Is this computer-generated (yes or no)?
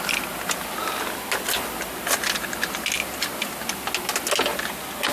no